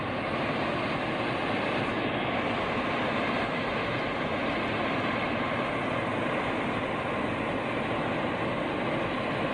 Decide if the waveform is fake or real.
real